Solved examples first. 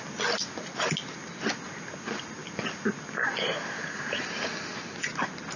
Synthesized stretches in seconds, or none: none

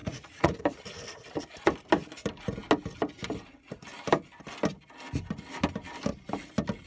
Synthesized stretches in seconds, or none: 0.0-0.6 (vocoder, Vocos)

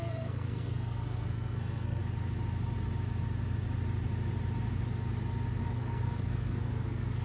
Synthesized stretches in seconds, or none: 0.0-2.0 (codec, SNAC); 5.6-7.2

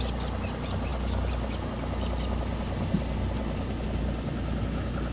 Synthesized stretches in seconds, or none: none

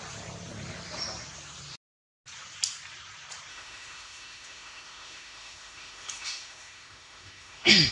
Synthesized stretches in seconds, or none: 3.5-7.9 (autoencoder, DAC-VAE)

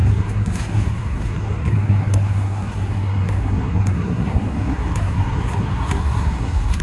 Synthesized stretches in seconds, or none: 0.0-6.8 (codec, SNAC)

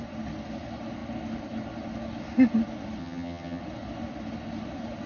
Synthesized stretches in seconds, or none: 3.0-3.6 (vocoder, HiFi-GAN)